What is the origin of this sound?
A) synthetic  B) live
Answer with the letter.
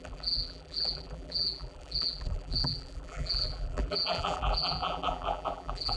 A